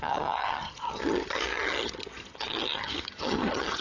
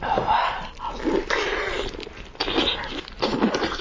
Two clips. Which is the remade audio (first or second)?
first